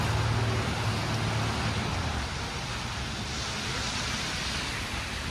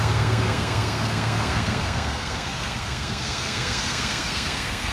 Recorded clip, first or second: first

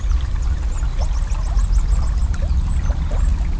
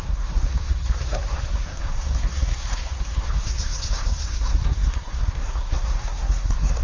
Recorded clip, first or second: first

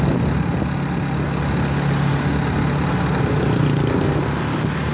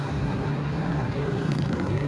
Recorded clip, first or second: first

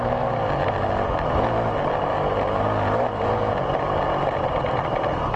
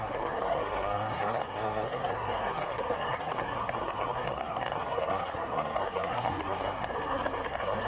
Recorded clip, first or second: first